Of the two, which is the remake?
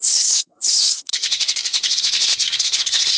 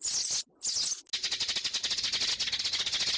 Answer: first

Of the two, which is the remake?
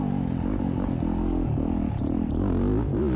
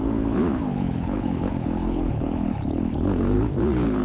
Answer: second